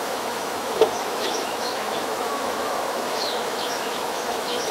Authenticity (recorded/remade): remade